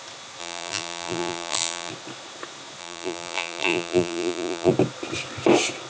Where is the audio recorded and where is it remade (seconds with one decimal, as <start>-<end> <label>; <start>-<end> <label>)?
0.0-0.4 recorded; 0.4-1.9 remade; 1.9-2.8 recorded; 2.8-4.7 remade; 4.7-5.9 recorded